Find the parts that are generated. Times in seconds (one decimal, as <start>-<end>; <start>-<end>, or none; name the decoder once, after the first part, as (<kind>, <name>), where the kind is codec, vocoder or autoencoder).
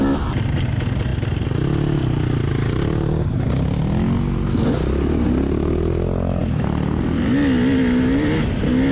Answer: none